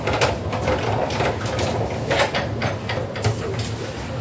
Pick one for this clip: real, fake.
real